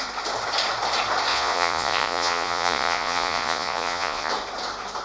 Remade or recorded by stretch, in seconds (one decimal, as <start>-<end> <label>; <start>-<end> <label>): 0.0-1.3 recorded; 1.3-4.3 remade; 4.3-5.0 recorded